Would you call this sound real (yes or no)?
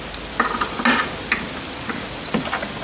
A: yes